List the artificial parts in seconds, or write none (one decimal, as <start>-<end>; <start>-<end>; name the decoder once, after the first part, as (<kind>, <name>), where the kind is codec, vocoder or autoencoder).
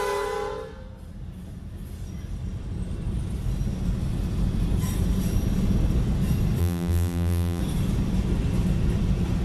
6.6-7.6 (vocoder, BigVGAN v2)